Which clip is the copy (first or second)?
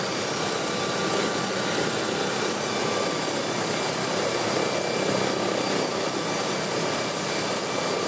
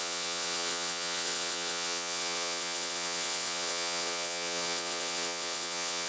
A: second